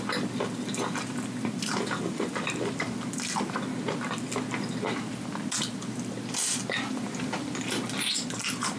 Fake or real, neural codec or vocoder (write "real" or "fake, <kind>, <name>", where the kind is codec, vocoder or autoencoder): real